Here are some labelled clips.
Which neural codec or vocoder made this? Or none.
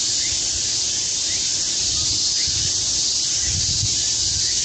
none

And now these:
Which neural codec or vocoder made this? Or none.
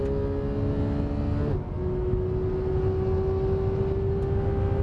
none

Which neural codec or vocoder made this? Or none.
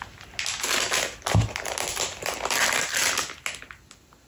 none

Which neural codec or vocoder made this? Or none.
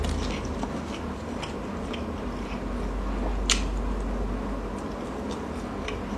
none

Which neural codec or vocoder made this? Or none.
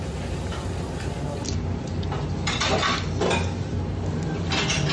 none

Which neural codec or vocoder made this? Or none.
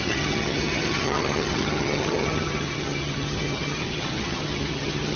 vocoder, HiFi-GAN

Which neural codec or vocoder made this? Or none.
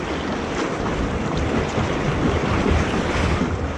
none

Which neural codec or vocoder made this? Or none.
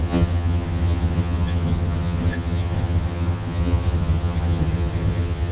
vocoder, HiFi-GAN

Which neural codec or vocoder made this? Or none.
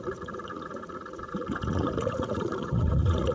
vocoder, Vocos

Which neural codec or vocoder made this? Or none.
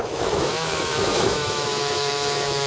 autoencoder, DAC-VAE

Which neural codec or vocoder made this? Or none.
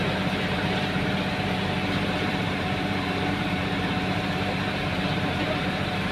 vocoder, BigVGAN v2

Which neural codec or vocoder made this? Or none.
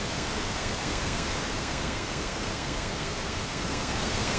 codec, SNAC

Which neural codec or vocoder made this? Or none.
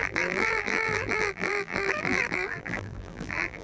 vocoder, BigVGAN v2